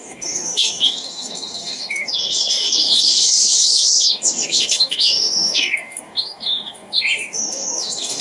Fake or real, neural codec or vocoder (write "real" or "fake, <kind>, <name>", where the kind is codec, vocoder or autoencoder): fake, codec, DAC